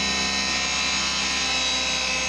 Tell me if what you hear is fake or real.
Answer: real